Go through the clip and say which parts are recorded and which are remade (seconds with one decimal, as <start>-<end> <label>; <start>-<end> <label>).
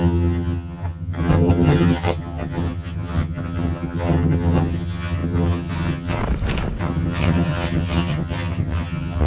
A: 0.0-6.2 remade; 6.2-6.8 recorded; 6.8-9.3 remade